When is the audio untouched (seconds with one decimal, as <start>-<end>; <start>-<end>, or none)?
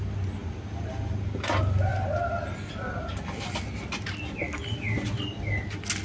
0.0-6.0